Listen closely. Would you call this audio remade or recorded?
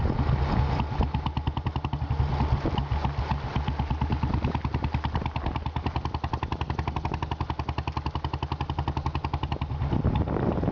recorded